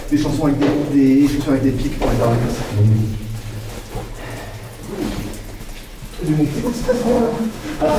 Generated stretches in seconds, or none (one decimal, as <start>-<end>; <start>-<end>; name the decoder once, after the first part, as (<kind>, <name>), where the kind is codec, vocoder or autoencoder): 2.2-2.7 (autoencoder, DAC-VAE); 6.5-8.0